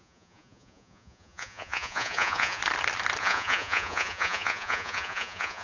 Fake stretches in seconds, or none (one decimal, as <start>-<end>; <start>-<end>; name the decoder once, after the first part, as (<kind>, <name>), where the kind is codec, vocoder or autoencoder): 0.0-2.6 (vocoder, Vocos); 3.2-5.6